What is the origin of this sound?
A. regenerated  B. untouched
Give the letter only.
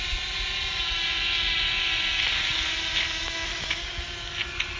B